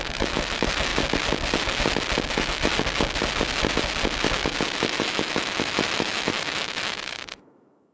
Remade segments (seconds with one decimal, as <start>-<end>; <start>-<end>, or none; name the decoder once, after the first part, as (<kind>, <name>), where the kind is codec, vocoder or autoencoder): 0.0-0.9 (autoencoder, DAC-VAE); 2.3-2.7; 4.8-7.9